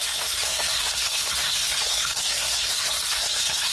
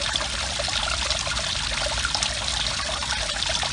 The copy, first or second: first